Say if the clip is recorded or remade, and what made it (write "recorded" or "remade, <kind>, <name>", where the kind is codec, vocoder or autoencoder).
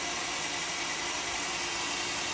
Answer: recorded